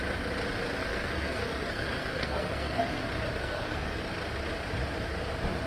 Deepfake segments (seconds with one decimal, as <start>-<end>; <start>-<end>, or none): 0.8-3.0; 3.4-4.0